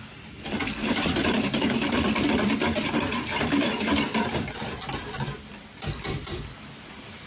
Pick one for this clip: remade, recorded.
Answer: remade